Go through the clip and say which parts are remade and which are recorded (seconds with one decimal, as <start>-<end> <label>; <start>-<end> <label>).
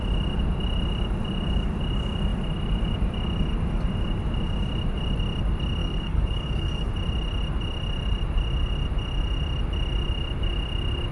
0.0-5.8 recorded; 5.8-6.9 remade; 6.9-11.1 recorded